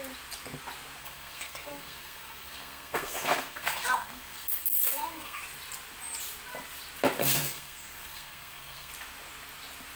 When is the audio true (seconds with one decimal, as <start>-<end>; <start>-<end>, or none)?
0.0-1.0; 5.4-7.2; 8.9-10.0

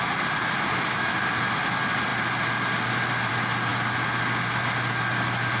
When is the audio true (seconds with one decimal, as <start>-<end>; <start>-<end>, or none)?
0.0-5.6

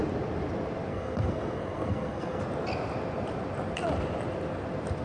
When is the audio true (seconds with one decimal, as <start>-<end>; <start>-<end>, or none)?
0.0-0.9; 2.4-5.0

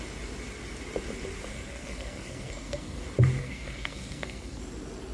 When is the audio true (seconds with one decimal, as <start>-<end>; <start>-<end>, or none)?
0.0-1.5; 3.0-3.4; 4.6-5.1

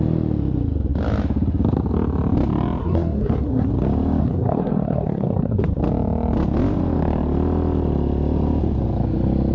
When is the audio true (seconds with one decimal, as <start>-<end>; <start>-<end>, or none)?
0.0-2.8; 3.7-4.2; 5.8-9.5